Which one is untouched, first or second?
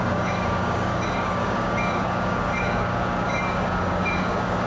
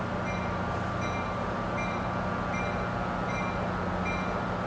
second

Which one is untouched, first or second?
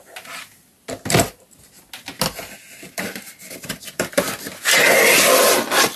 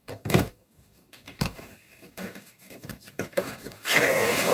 first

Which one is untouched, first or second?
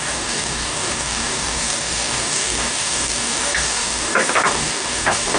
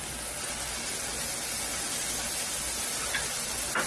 second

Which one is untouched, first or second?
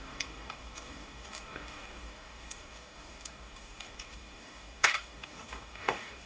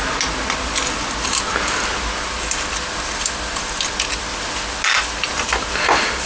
second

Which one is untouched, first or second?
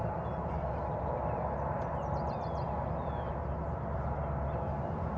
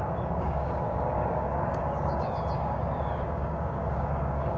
first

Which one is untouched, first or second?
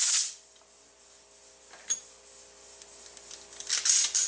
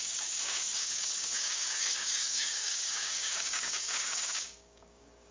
first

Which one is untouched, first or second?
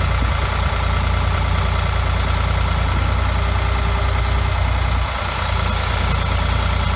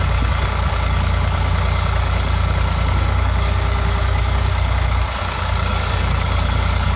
first